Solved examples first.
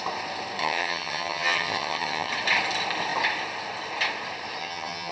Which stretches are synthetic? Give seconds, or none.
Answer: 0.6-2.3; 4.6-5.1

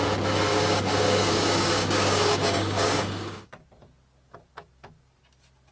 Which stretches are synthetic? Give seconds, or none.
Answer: 0.5-3.5